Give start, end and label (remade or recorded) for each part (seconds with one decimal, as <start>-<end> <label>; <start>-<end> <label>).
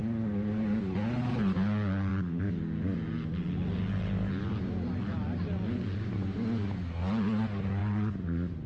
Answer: 0.0-8.7 recorded